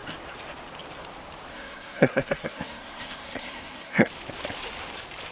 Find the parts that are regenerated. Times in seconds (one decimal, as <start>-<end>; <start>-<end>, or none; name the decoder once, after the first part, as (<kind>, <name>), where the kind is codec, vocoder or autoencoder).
1.5-4.1 (codec, SNAC)